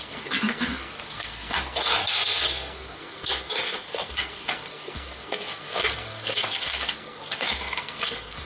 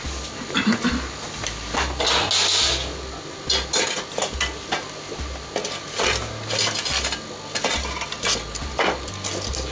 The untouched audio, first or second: second